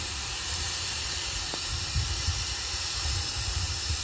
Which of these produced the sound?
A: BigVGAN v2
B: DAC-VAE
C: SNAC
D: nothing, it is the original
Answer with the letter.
A